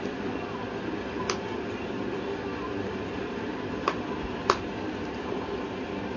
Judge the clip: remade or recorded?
recorded